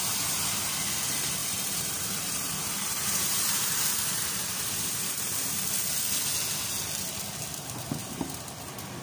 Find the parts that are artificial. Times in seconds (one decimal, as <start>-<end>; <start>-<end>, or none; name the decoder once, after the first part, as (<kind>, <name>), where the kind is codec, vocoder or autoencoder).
1.4-5.7 (vocoder, BigVGAN v2); 8.0-8.5